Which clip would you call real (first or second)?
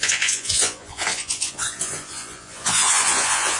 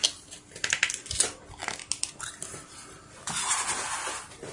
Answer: second